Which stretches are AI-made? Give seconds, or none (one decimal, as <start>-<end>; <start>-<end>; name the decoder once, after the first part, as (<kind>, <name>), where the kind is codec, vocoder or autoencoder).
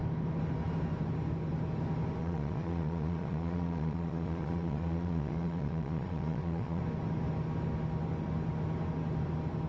2.2-6.8 (vocoder, Vocos)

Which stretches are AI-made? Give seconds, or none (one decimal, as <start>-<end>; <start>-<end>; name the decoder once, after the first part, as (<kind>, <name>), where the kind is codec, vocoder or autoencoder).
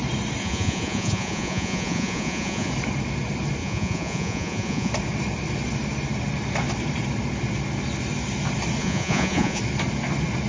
0.4-2.7 (vocoder, Vocos); 3.6-4.9; 8.8-9.6